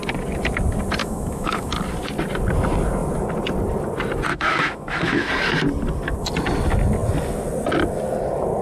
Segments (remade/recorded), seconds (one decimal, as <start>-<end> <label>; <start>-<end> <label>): 0.0-1.0 recorded; 1.0-1.7 remade; 1.7-4.3 recorded; 4.3-5.3 remade; 5.3-8.6 recorded